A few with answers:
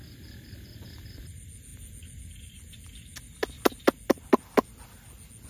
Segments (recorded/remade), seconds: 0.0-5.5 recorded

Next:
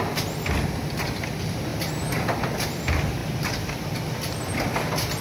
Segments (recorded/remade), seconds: 0.0-1.7 recorded; 1.7-2.8 remade; 2.8-5.2 recorded

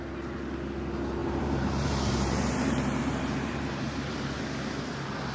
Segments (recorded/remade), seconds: 0.0-1.2 recorded; 1.2-4.4 remade; 4.4-5.3 recorded

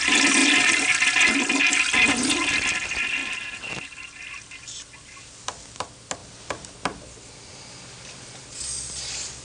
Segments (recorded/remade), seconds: 0.0-9.4 recorded

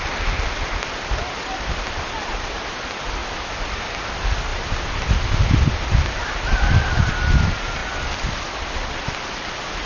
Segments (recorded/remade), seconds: 0.0-4.5 recorded; 4.5-7.1 remade; 7.1-9.9 recorded

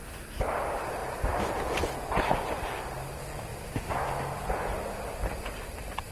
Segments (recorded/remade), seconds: 0.0-1.0 remade; 1.0-2.2 recorded; 2.2-3.5 remade; 3.5-4.5 recorded; 4.5-6.1 remade

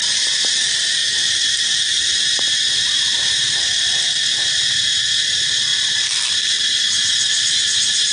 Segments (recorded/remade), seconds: 0.0-1.0 remade; 1.0-1.6 recorded; 1.6-8.1 remade